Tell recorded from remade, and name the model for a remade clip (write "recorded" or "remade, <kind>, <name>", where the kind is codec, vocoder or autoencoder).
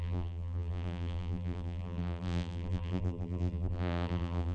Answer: remade, vocoder, BigVGAN v2